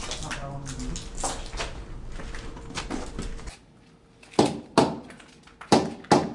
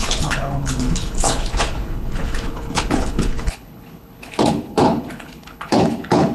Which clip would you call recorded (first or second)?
first